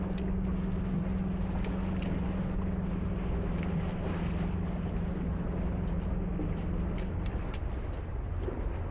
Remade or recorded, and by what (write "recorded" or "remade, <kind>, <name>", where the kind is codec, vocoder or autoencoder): recorded